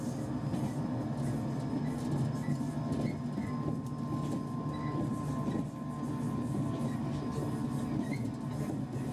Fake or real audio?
real